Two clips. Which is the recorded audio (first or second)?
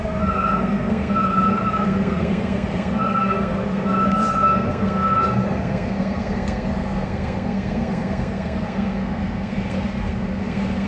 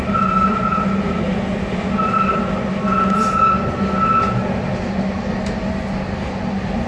second